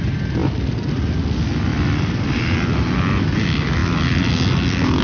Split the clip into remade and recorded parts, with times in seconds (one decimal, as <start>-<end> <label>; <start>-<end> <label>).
0.0-0.4 recorded; 0.4-0.9 remade; 0.9-1.7 recorded; 1.7-2.7 remade; 2.7-5.0 recorded